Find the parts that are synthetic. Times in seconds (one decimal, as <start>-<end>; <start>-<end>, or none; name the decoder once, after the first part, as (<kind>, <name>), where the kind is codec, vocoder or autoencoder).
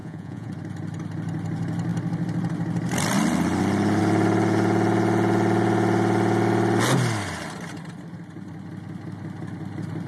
0.0-0.5 (vocoder, Vocos)